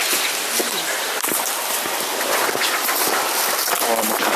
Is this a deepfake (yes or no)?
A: no